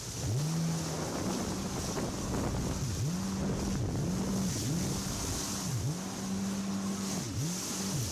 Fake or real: real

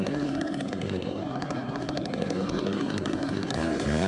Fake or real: fake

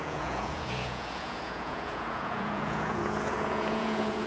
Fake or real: fake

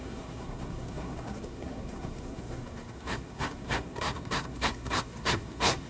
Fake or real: fake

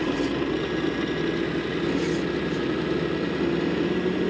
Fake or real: real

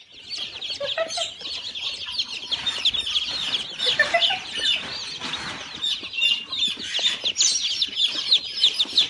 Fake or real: real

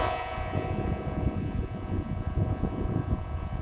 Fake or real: fake